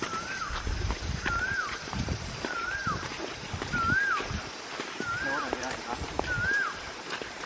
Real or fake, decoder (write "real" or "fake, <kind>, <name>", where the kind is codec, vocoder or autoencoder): real